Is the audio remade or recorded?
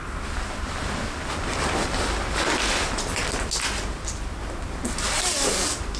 recorded